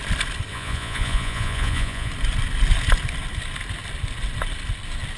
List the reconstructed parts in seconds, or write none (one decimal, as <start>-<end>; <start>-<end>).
0.5-2.1